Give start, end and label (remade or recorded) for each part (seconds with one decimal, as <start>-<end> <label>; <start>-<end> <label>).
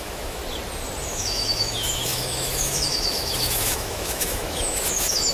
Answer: 0.0-0.4 remade; 0.4-1.1 recorded; 1.1-5.3 remade